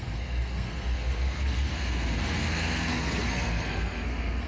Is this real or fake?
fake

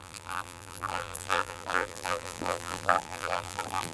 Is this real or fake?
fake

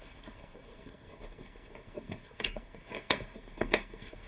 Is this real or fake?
fake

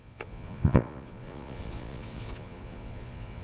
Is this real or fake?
fake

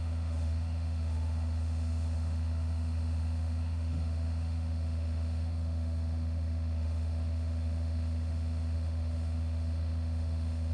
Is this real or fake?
fake